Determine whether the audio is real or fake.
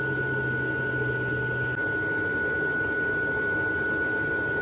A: real